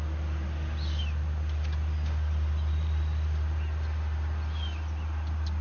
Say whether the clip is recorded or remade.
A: recorded